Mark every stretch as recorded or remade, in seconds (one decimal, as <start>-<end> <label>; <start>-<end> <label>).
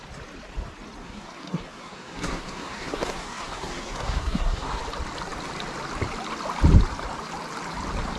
0.0-1.0 recorded; 1.0-4.8 remade; 4.8-8.2 recorded